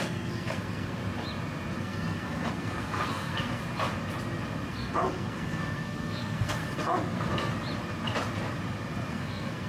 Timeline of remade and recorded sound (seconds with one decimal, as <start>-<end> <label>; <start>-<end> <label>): 0.0-1.0 remade; 1.0-1.8 recorded; 1.8-3.6 remade; 3.6-4.7 recorded; 4.7-7.5 remade; 7.5-9.1 recorded; 9.1-9.7 remade